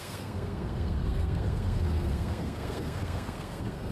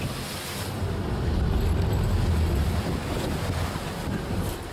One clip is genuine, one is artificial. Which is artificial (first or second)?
first